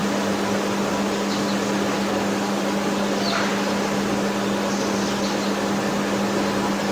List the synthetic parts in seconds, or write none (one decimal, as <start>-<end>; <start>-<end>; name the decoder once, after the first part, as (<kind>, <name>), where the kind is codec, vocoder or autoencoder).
0.9-3.5 (vocoder, BigVGAN v2); 5.9-6.9